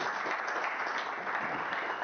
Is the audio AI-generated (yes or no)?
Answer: no